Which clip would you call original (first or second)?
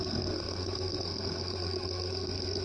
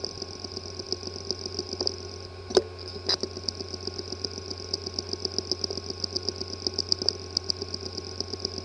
second